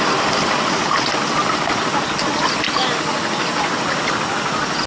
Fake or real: real